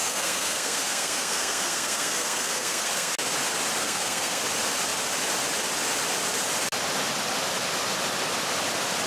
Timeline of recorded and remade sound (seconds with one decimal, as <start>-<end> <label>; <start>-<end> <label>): 0.0-3.1 remade; 3.1-3.8 recorded; 3.8-4.4 remade; 4.4-9.1 recorded